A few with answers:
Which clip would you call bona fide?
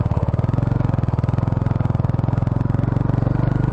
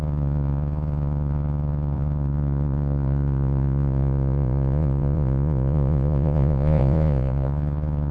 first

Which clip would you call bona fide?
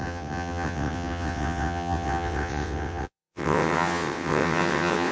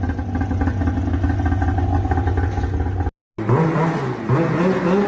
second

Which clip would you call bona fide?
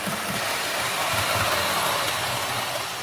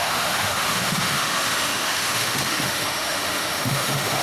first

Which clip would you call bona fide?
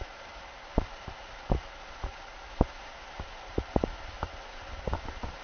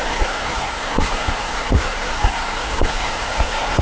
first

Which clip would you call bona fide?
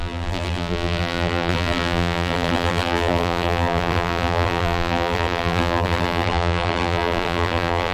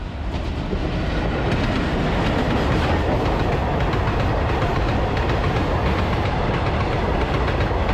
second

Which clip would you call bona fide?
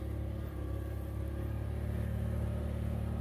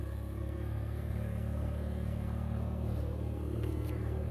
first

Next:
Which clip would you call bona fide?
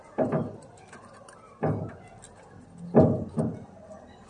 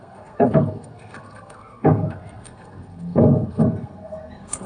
first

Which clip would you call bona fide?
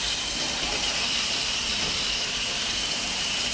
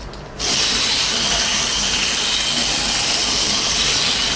second